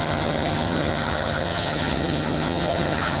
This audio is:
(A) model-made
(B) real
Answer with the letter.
A